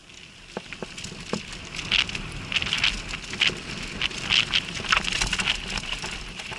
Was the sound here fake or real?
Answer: real